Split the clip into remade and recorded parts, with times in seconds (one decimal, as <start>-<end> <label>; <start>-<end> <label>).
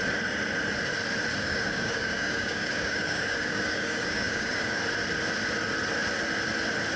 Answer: 0.0-1.3 recorded; 1.3-4.8 remade; 4.8-7.0 recorded